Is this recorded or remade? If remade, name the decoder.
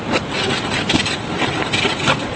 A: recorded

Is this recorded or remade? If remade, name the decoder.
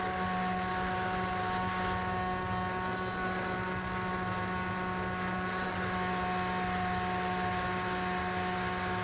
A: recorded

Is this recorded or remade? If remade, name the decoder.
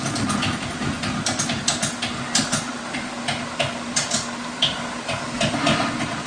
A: recorded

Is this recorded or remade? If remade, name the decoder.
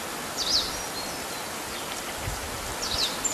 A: recorded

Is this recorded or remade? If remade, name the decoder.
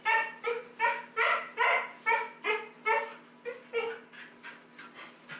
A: recorded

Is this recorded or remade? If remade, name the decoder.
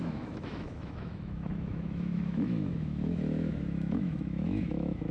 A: remade, autoencoder, DAC-VAE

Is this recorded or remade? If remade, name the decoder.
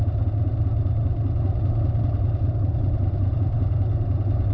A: recorded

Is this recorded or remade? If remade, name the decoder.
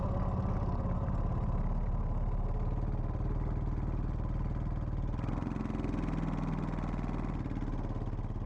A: recorded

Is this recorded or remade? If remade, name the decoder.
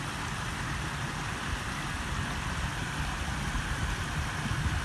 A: recorded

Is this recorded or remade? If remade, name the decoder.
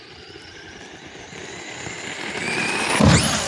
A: recorded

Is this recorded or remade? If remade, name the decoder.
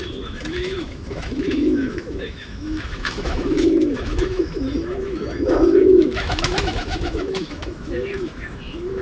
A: remade, autoencoder, DAC-VAE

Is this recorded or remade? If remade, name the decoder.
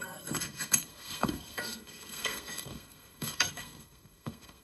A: remade, codec, SNAC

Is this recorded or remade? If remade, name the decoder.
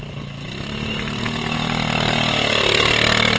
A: recorded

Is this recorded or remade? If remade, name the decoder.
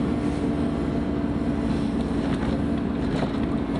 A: recorded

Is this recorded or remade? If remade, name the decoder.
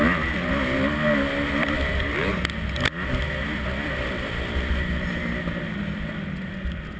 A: recorded